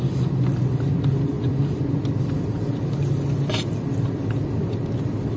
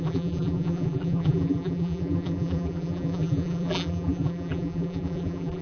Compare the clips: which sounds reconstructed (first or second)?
second